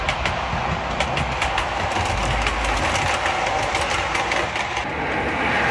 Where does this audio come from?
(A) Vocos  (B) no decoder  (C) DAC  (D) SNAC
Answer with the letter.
B